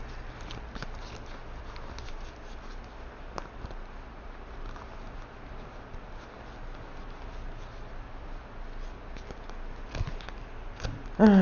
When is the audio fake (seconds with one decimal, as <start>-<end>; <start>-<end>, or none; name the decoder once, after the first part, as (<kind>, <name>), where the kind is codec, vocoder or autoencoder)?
none